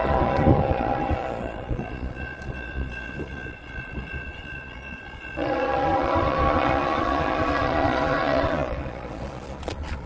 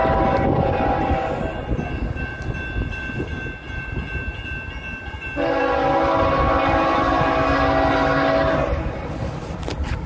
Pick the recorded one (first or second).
second